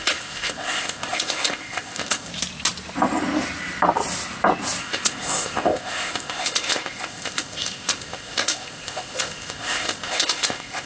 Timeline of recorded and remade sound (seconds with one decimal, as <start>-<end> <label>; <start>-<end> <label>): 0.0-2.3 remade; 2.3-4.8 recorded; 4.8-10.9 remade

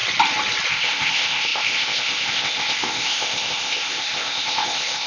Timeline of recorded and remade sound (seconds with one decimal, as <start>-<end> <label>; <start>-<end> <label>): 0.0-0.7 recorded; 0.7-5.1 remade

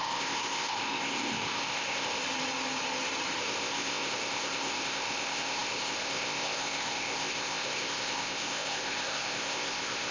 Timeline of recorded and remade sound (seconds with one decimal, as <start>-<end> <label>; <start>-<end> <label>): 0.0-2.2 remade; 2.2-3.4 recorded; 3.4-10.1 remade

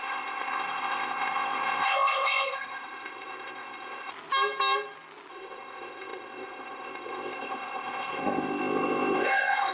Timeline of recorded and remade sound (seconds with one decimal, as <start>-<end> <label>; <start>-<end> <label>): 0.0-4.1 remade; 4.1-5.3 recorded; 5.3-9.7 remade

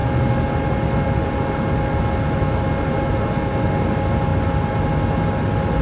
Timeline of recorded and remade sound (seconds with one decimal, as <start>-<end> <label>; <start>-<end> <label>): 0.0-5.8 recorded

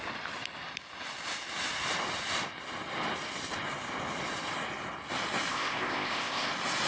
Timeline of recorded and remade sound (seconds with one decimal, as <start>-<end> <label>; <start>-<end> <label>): 0.0-5.5 recorded; 5.5-6.5 remade; 6.5-6.9 recorded

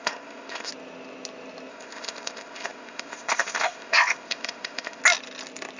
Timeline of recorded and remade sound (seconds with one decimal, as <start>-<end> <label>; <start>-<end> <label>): 0.0-0.7 remade; 0.7-1.7 recorded; 1.7-5.0 remade; 5.0-5.8 recorded